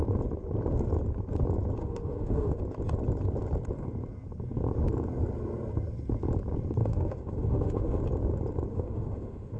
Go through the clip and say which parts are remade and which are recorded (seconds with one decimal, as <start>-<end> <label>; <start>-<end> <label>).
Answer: 0.0-1.8 recorded; 1.8-2.6 remade; 2.6-6.8 recorded; 6.8-8.0 remade; 8.0-8.7 recorded; 8.7-9.6 remade